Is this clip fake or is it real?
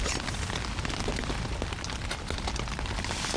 real